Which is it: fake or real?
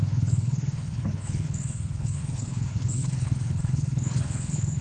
fake